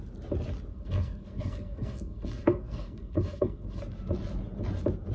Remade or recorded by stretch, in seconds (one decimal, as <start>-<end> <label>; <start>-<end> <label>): 0.0-0.7 recorded; 0.7-3.8 remade; 3.8-5.1 recorded